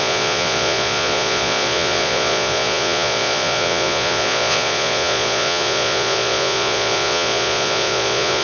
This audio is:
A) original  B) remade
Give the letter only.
B